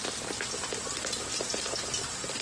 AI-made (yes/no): no